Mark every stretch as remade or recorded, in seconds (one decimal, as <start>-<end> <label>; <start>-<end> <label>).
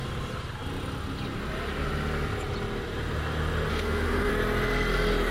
0.0-3.7 recorded; 3.7-4.3 remade; 4.3-5.3 recorded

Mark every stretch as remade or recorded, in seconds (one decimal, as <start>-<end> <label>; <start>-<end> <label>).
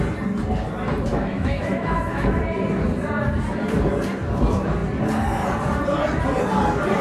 0.0-1.1 recorded; 1.1-2.4 remade; 2.4-7.0 recorded